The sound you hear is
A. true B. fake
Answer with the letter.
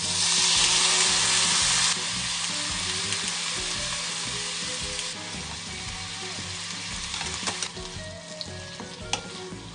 A